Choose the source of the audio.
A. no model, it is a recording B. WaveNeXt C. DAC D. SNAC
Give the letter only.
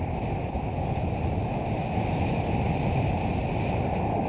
A